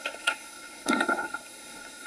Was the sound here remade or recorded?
remade